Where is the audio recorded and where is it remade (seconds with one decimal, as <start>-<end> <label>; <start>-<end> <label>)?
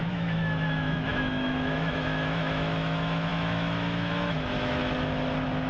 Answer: 0.0-4.8 remade; 4.8-5.7 recorded